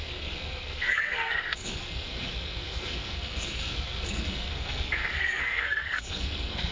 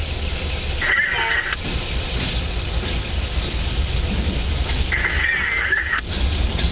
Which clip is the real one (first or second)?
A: second